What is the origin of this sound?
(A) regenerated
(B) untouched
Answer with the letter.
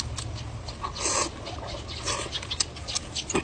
B